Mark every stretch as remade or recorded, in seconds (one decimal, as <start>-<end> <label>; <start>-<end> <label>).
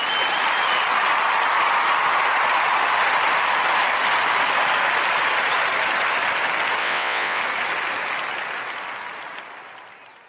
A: 0.0-6.8 recorded; 6.8-7.4 remade; 7.4-10.3 recorded